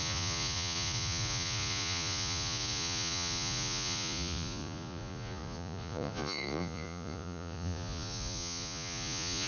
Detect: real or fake fake